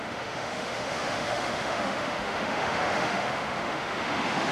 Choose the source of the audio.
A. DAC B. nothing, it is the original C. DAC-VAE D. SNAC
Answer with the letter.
C